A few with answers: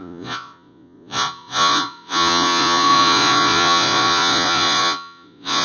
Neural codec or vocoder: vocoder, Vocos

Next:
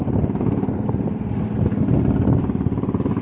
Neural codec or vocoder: none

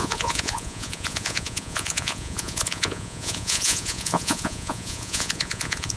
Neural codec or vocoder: vocoder, Vocos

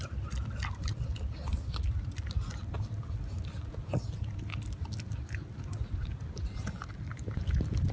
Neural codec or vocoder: none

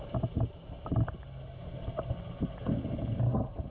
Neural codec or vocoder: none